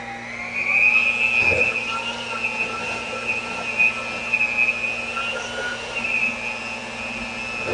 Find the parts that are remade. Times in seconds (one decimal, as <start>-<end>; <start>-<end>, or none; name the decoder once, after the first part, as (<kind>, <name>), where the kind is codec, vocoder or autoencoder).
5.3-6.2 (vocoder, BigVGAN v2)